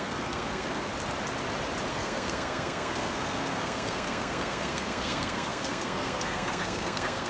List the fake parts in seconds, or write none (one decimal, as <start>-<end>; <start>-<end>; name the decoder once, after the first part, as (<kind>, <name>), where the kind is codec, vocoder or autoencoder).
0.0-0.9 (codec, SNAC); 1.9-7.3